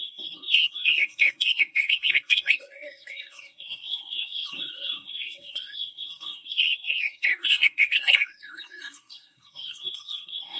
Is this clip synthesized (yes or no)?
yes